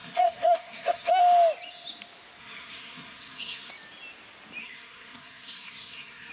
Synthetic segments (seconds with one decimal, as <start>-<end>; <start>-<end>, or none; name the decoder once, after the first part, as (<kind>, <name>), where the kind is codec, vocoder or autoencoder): 0.0-1.2 (codec, SNAC); 2.4-3.7; 4.6-6.3